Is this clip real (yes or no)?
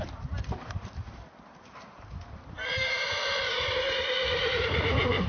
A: no